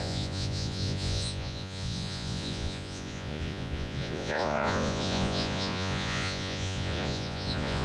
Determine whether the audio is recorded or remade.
remade